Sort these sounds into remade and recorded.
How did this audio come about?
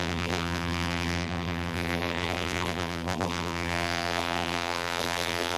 remade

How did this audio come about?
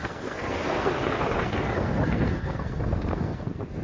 remade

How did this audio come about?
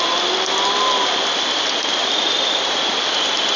recorded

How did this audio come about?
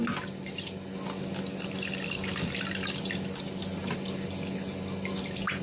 recorded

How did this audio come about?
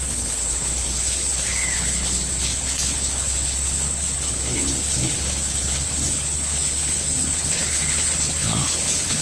remade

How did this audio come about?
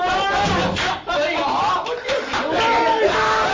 recorded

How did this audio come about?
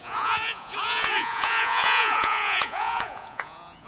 remade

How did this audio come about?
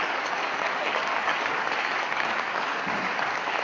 remade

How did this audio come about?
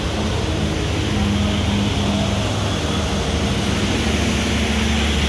recorded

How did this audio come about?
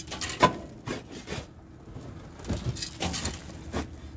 recorded